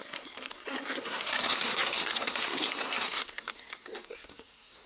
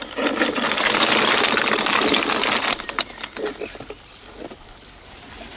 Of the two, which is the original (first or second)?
second